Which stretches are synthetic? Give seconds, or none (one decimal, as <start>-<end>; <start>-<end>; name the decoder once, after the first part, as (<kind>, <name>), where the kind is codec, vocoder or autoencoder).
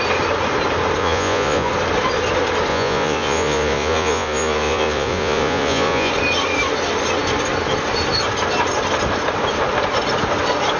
1.0-1.7 (vocoder, Vocos); 2.7-6.1